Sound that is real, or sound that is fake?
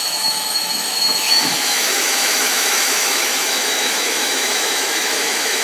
fake